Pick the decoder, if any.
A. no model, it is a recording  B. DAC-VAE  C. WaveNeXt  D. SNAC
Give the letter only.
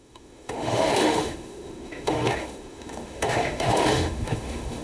B